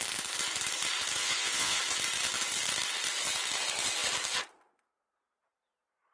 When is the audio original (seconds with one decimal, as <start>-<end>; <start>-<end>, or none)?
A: 0.0-1.2; 1.8-6.1